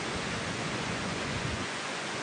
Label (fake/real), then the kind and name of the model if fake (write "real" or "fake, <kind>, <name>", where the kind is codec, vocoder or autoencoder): fake, vocoder, Vocos